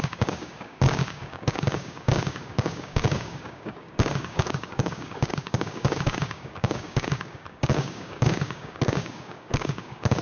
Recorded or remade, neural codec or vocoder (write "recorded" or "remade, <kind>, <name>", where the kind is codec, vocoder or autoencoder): remade, codec, DAC